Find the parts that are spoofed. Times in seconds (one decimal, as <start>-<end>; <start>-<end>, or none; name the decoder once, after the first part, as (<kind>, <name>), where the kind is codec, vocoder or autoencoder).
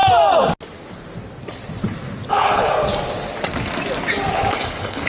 2.3-2.7 (codec, HILCodec); 4.3-5.1